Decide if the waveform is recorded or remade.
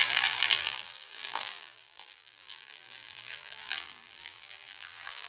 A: remade